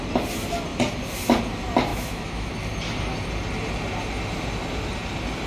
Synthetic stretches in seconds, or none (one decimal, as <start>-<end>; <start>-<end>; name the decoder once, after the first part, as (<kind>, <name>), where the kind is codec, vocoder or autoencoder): 1.9-2.5 (autoencoder, DAC-VAE)